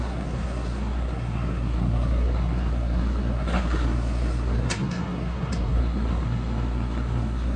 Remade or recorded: remade